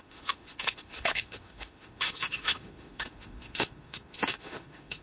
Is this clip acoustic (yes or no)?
no